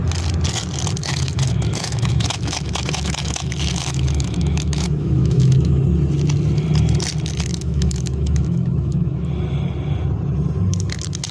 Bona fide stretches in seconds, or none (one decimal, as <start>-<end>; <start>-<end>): 0.0-1.0; 5.8-7.5; 9.3-11.3